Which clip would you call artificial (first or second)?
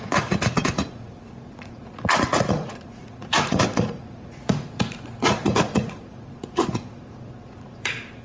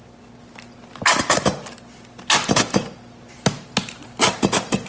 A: first